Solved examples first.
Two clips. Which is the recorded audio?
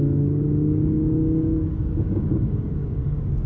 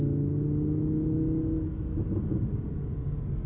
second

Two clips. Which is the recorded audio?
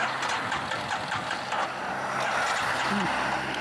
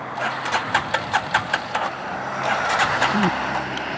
first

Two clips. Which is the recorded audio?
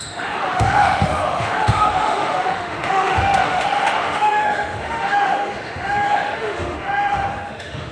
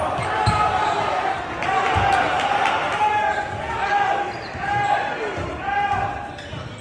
second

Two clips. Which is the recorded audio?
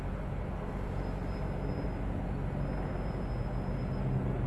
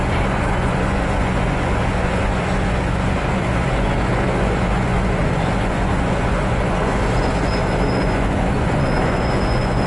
first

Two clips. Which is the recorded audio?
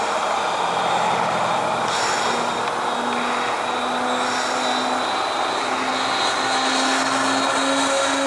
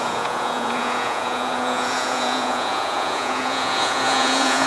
first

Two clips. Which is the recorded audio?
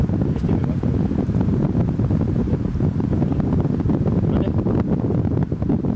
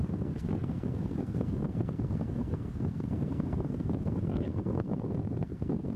first